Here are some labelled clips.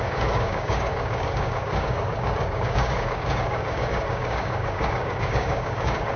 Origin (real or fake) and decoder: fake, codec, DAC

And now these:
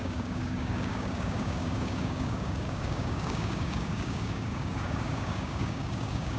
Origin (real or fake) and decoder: fake, codec, DAC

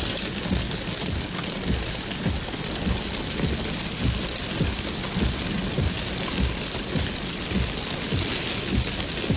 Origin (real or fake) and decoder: real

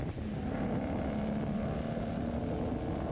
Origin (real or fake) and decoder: real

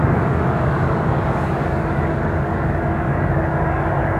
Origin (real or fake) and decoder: fake, codec, DAC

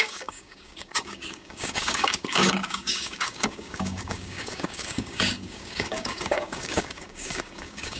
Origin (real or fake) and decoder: fake, codec, DAC